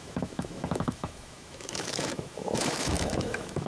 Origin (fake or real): fake